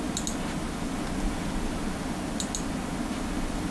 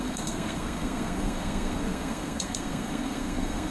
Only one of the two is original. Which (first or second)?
first